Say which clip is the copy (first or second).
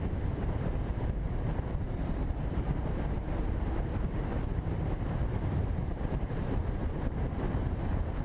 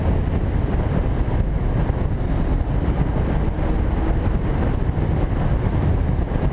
first